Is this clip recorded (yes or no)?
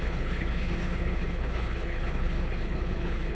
no